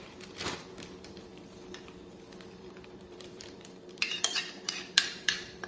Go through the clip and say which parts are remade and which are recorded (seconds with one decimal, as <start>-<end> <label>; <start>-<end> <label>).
0.0-1.3 remade; 1.3-2.6 recorded; 2.6-5.7 remade